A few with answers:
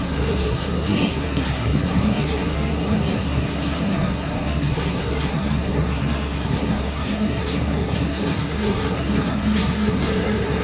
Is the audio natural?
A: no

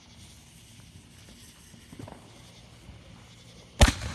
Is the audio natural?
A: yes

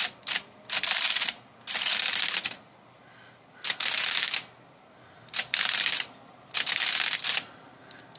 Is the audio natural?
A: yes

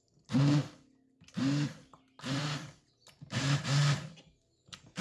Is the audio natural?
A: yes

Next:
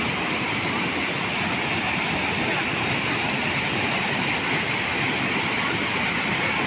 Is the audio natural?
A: yes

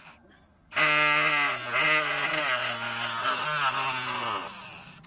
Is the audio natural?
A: yes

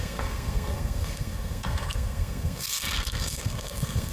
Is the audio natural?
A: no